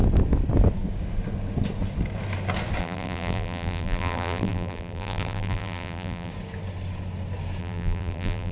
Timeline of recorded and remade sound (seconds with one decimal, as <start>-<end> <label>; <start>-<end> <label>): 0.0-2.8 recorded; 2.8-6.3 remade; 6.3-7.6 recorded; 7.6-8.5 remade